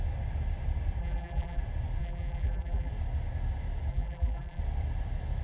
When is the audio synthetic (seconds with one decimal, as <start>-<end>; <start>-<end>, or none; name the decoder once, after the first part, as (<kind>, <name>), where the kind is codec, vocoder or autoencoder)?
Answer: 1.0-1.6 (vocoder, BigVGAN v2); 2.0-2.9; 3.9-4.6